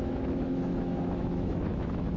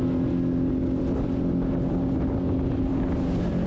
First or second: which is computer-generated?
first